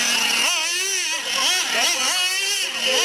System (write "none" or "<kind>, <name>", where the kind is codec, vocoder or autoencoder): none